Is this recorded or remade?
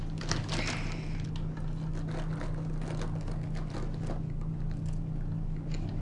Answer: recorded